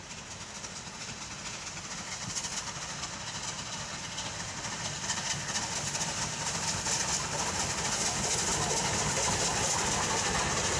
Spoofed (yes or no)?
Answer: no